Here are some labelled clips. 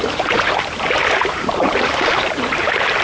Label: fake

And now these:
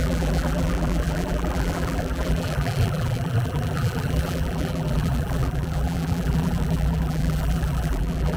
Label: fake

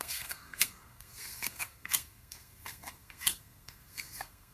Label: fake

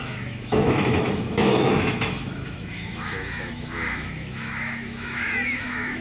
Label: fake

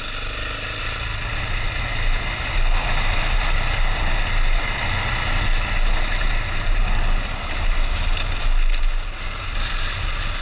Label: real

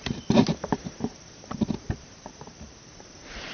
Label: fake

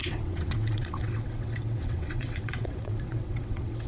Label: fake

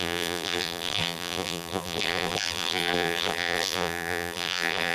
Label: fake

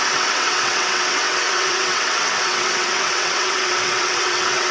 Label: fake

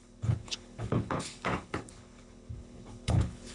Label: fake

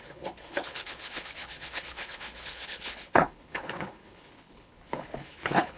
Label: fake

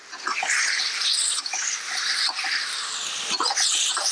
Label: real